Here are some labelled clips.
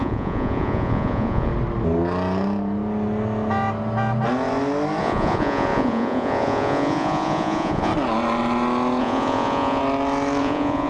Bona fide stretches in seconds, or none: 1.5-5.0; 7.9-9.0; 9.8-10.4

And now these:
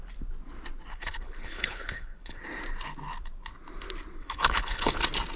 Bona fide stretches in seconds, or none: 0.0-0.9; 2.4-4.2; 5.0-5.4

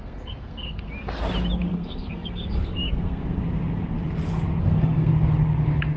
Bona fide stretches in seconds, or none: 0.9-1.7; 3.4-4.6; 5.1-6.0

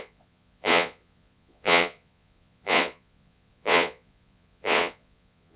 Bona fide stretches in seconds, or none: none

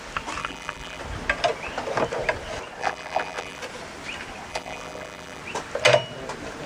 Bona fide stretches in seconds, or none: 0.0-0.4; 1.0-2.8; 3.6-4.5; 5.4-6.7

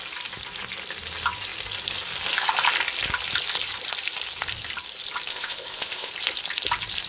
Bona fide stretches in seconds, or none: 0.0-5.3; 6.1-7.1

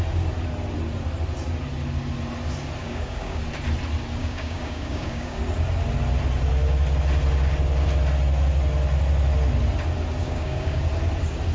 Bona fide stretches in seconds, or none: 0.0-2.8; 3.4-4.2; 5.4-10.2; 10.8-11.5